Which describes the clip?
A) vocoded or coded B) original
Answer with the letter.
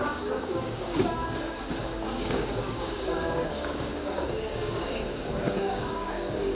A